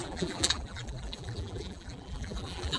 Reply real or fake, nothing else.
fake